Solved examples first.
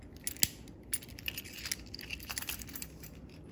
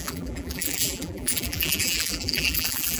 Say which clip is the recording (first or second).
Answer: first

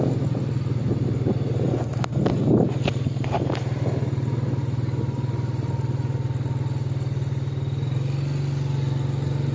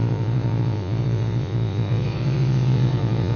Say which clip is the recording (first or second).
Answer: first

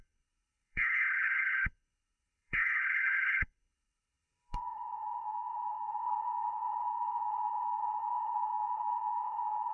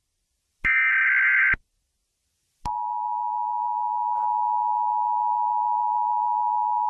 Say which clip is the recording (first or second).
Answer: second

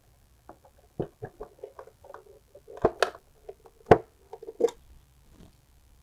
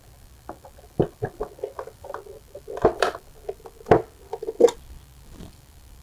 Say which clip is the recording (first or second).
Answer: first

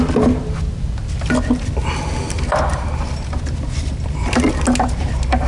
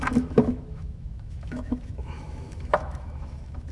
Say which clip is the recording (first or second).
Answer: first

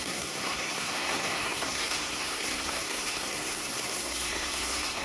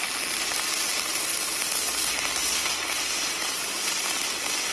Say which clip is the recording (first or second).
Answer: second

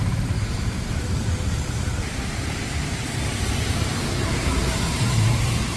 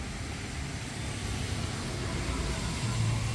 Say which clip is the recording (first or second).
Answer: second